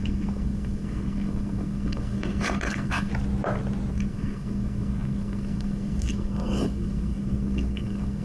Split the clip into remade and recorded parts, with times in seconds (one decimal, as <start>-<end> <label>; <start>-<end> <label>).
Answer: 0.0-3.1 remade; 3.1-3.9 recorded; 3.9-8.2 remade